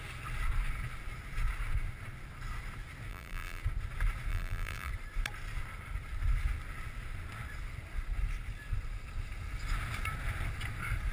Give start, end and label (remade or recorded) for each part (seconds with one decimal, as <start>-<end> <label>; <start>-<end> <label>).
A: 0.0-3.1 recorded; 3.1-3.6 remade; 3.6-4.3 recorded; 4.3-4.9 remade; 4.9-11.1 recorded